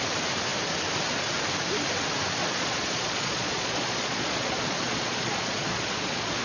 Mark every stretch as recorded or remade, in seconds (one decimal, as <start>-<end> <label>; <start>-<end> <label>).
0.0-2.4 recorded; 2.4-6.4 remade